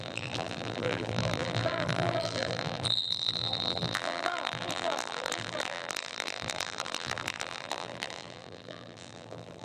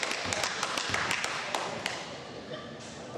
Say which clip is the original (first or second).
second